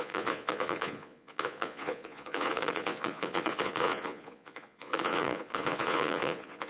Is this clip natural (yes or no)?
no